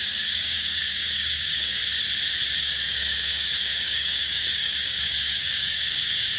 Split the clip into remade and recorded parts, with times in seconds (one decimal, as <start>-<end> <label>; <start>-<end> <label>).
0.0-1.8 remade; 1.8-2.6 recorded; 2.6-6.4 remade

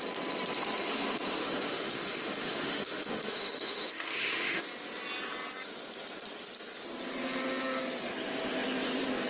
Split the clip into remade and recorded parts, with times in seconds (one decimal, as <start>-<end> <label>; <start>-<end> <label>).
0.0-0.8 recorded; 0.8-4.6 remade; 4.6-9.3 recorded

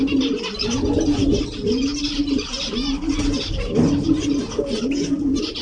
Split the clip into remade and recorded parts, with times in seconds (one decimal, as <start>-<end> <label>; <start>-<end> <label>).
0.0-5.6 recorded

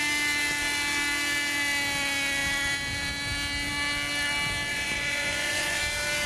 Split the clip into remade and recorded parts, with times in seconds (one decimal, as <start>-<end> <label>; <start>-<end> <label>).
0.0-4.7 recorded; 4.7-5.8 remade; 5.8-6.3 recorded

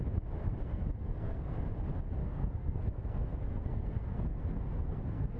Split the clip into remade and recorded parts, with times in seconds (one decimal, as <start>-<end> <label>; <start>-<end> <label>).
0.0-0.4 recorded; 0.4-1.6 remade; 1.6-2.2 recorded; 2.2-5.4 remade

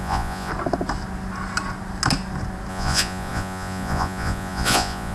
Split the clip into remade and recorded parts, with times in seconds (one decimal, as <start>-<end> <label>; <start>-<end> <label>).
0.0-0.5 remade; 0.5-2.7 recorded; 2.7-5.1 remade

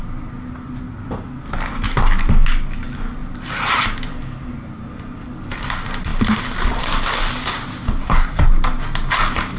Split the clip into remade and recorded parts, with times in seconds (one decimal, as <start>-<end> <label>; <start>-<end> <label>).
0.0-8.0 recorded; 8.0-8.5 remade; 8.5-9.6 recorded

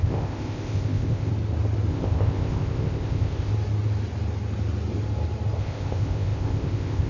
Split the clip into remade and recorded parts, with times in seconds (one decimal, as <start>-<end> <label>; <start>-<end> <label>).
0.0-1.3 remade; 1.3-1.9 recorded; 1.9-3.5 remade; 3.5-5.6 recorded; 5.6-7.1 remade